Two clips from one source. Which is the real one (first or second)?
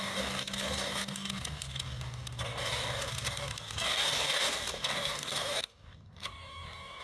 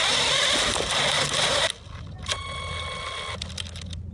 second